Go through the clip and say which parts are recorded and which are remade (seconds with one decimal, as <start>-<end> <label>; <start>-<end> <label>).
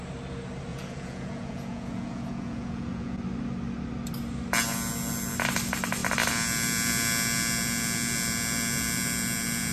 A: 0.0-0.7 recorded; 0.7-3.2 remade; 3.2-9.7 recorded